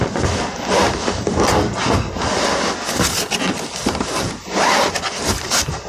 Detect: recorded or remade recorded